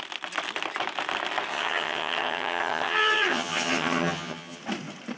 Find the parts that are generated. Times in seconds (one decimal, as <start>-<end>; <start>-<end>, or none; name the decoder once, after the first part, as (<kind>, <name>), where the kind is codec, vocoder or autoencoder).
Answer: 1.5-4.6 (vocoder, HiFi-GAN)